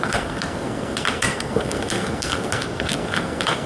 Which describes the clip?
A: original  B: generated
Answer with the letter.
B